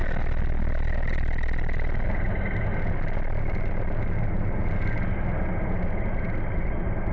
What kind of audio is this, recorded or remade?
recorded